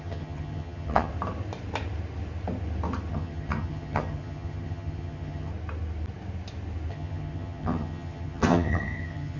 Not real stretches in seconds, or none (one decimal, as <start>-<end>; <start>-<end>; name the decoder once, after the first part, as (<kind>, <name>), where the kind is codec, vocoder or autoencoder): 0.0-1.1 (vocoder, HiFi-GAN); 3.1-5.5; 6.9-9.4